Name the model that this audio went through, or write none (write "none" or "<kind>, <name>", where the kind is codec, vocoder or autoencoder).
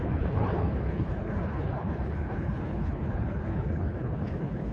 codec, HILCodec